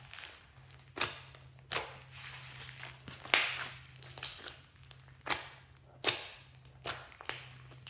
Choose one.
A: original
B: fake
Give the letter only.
A